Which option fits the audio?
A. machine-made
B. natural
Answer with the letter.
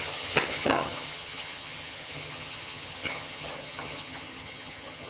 A